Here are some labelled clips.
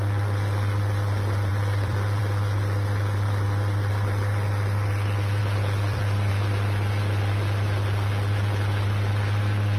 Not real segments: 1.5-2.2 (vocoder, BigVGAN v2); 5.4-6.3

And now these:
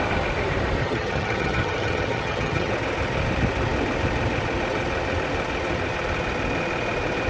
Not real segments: 0.8-2.7 (vocoder, HiFi-GAN)

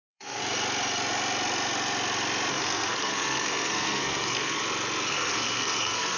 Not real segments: 0.0-0.4 (codec, SNAC); 2.5-4.6; 5.1-6.2